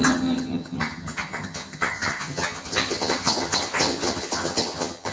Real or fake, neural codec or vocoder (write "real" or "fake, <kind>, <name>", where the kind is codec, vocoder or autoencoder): fake, vocoder, HiFi-GAN